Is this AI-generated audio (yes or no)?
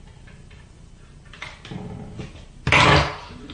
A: no